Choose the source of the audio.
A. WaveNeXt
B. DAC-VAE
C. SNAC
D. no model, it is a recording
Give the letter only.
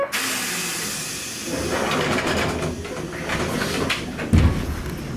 D